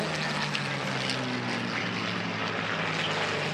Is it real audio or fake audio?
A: real